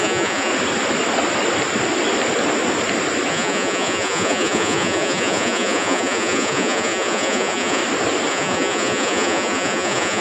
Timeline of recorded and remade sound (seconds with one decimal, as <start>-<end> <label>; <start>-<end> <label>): 0.0-0.5 remade; 0.5-3.3 recorded; 3.3-7.8 remade; 7.8-8.3 recorded; 8.3-10.2 remade